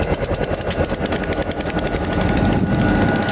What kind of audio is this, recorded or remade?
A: recorded